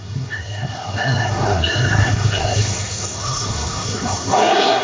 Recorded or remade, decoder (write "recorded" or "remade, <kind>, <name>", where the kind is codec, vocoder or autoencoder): remade, codec, SNAC